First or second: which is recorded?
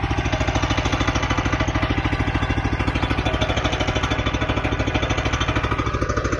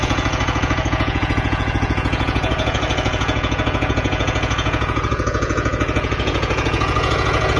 first